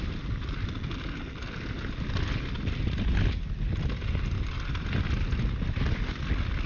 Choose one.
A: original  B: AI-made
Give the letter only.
A